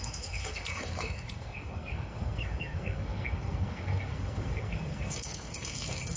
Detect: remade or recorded remade